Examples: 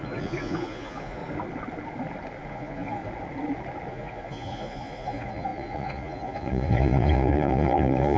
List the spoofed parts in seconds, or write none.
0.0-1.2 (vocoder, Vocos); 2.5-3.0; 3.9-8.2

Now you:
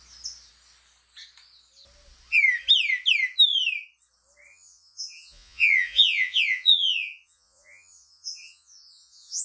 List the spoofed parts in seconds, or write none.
4.5-9.4 (vocoder, Vocos)

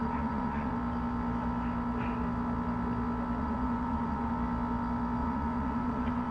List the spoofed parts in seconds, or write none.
0.0-0.7 (vocoder, Vocos); 3.4-4.3; 5.2-6.3